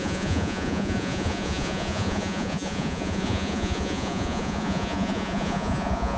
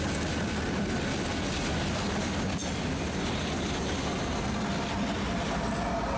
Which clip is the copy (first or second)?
first